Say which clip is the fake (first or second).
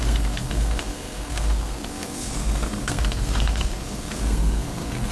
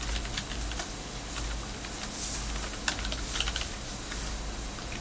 first